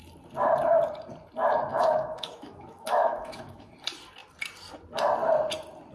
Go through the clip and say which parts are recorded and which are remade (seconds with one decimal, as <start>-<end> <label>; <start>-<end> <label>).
0.0-1.7 recorded; 1.7-3.7 remade; 3.7-5.9 recorded